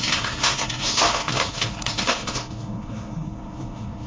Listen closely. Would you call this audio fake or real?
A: fake